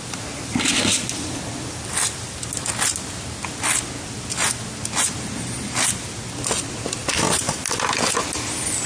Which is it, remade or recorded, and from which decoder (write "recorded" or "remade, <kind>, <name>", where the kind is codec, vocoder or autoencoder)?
recorded